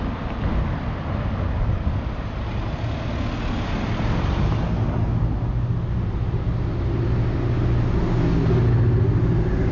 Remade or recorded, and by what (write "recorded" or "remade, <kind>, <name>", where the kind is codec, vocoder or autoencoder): recorded